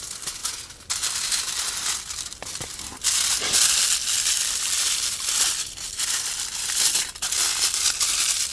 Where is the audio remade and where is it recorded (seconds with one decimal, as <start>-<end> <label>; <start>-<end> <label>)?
0.0-8.5 recorded